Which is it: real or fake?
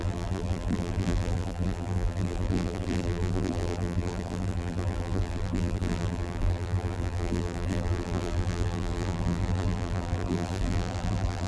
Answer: fake